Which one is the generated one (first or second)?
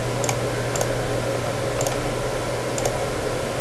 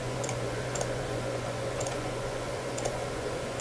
second